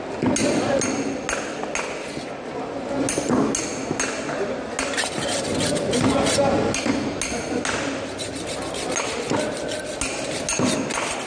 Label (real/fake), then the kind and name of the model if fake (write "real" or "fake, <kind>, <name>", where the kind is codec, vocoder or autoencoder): real